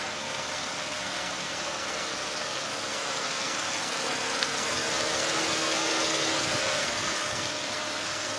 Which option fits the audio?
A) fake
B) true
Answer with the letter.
A